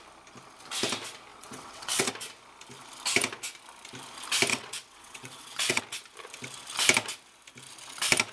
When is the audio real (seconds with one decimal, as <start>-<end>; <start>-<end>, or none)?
0.0-1.3; 2.1-4.5; 5.8-8.3